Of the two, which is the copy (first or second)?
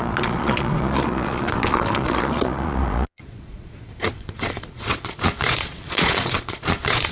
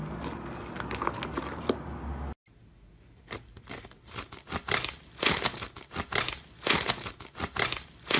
first